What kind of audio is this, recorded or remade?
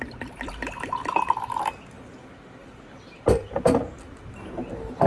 recorded